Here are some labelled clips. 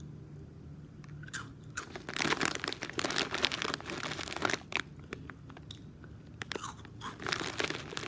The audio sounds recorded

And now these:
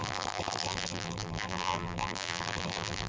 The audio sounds remade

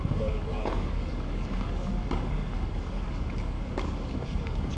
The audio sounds remade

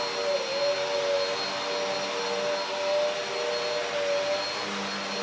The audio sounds recorded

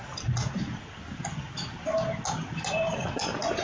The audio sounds recorded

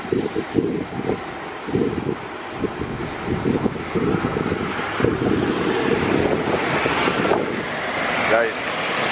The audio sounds recorded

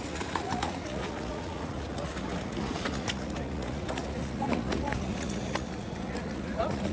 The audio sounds remade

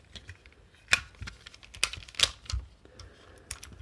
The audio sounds recorded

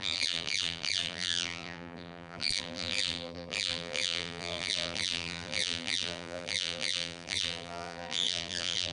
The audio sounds remade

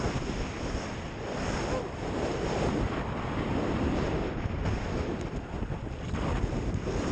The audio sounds remade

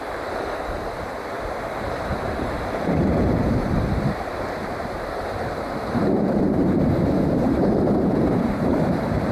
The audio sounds remade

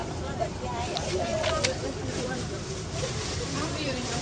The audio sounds remade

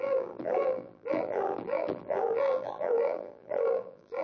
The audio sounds remade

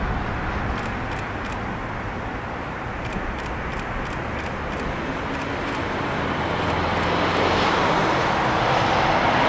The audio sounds recorded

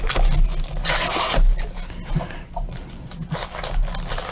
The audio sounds recorded